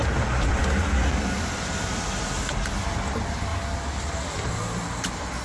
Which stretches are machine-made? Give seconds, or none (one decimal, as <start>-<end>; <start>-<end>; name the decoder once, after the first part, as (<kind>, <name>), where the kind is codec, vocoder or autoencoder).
none